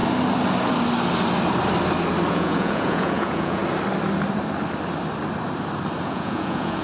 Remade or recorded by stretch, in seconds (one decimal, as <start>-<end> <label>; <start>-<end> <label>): 0.0-2.3 recorded; 2.3-3.6 remade; 3.6-6.0 recorded; 6.0-6.8 remade